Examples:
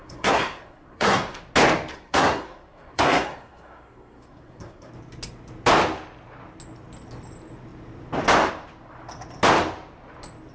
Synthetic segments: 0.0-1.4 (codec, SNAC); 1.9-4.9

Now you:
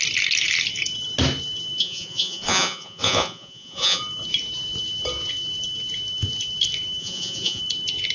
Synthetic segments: 1.8-4.0 (vocoder, Vocos); 7.0-7.6

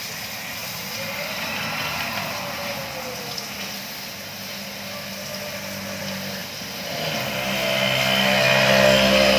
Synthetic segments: none

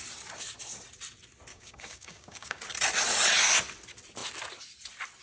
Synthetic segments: 1.5-2.6 (codec, DAC)